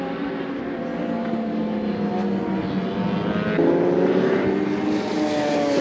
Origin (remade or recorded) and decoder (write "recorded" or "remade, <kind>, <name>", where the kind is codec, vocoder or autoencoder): recorded